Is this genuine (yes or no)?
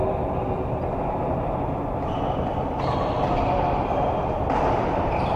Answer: yes